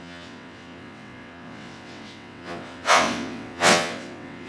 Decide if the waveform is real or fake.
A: fake